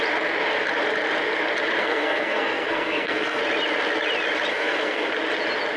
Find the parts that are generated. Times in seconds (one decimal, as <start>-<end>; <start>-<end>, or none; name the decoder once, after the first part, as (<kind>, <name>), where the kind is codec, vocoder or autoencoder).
1.8-3.4 (codec, SNAC); 4.5-5.1